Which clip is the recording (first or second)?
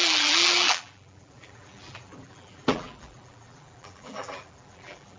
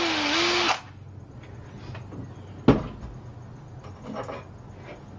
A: second